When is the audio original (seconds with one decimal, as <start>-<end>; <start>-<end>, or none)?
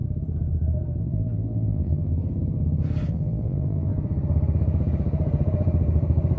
0.0-1.0; 2.1-3.1; 3.9-6.4